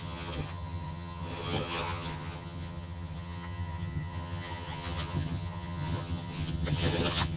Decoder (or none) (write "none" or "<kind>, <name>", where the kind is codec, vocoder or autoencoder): vocoder, HiFi-GAN